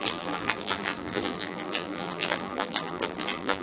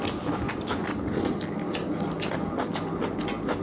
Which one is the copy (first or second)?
first